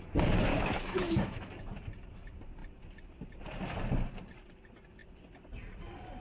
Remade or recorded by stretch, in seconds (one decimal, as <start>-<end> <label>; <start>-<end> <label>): 0.0-0.5 recorded; 0.5-1.5 remade; 1.5-6.2 recorded